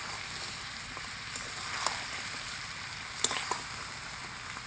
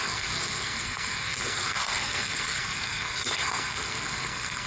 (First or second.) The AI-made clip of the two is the second